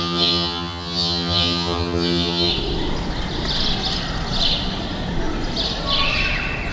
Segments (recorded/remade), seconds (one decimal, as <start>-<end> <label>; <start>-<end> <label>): 0.0-2.5 remade; 2.5-6.7 recorded